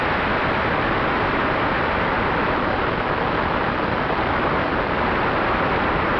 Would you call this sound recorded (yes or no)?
yes